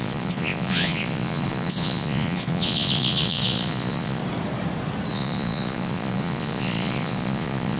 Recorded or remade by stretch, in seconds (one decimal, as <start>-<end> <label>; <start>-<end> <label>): 0.0-4.2 remade; 4.2-5.1 recorded; 5.1-7.8 remade